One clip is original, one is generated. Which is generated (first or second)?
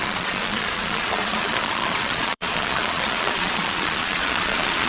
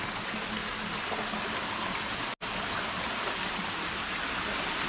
first